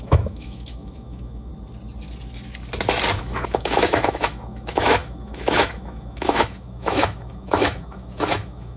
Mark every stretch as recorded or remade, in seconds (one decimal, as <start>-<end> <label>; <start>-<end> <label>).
0.0-1.5 remade; 1.5-3.2 recorded; 3.2-8.8 remade